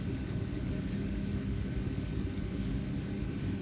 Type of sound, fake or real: fake